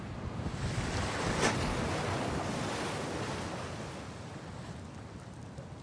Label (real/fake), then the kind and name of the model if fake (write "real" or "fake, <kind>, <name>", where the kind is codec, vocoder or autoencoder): real